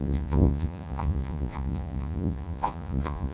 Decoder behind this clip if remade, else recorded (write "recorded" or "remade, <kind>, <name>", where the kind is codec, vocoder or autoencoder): remade, vocoder, Vocos